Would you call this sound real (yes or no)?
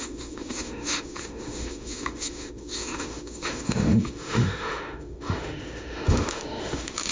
no